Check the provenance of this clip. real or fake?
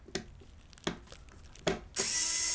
real